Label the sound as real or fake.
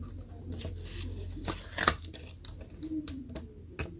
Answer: real